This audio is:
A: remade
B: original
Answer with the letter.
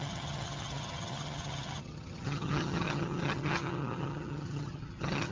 A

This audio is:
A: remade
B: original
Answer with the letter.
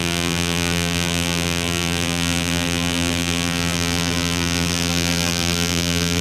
A